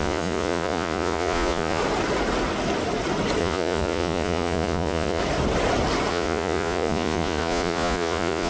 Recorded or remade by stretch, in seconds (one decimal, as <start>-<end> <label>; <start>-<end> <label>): 0.0-1.8 remade; 1.8-3.4 recorded; 3.4-5.2 remade; 5.2-6.1 recorded; 6.1-8.5 remade